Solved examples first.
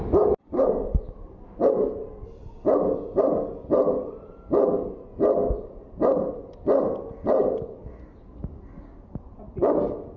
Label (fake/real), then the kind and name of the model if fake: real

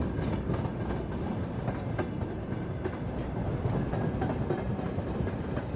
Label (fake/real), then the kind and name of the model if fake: real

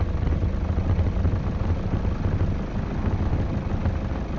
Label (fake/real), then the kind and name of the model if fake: real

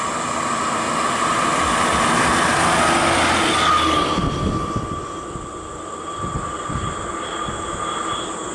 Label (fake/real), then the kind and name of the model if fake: real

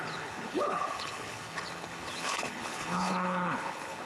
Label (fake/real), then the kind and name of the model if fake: fake, codec, HILCodec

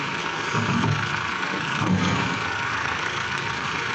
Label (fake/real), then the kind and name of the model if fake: fake, codec, SNAC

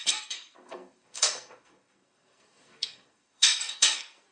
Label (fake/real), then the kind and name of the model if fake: fake, codec, SNAC